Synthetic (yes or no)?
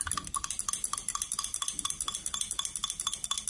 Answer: no